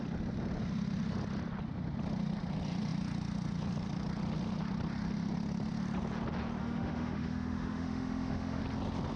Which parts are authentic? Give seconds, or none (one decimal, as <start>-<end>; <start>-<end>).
0.0-6.6; 8.6-9.2

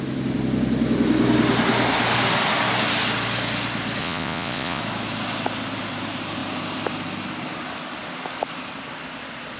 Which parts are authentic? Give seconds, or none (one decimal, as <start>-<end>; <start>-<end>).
0.0-4.0; 4.8-9.6

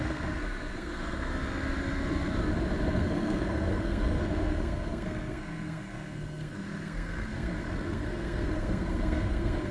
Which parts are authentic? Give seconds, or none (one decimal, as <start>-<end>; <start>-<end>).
1.3-2.9

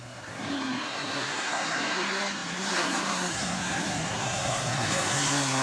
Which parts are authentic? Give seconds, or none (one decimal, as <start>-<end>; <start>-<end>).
none

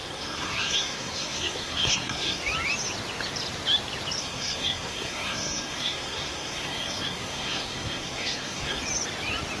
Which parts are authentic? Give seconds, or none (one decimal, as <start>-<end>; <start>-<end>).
2.4-4.2; 8.8-9.6

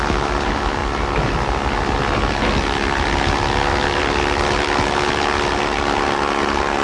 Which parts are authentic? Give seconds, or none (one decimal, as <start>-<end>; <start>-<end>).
0.0-6.8

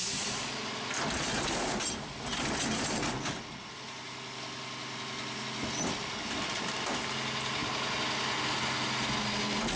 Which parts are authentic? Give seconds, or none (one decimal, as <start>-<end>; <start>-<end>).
0.0-9.8

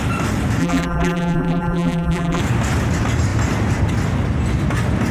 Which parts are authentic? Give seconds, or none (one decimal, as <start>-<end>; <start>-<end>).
0.0-0.6; 2.4-5.1